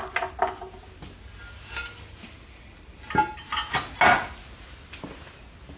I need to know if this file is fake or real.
real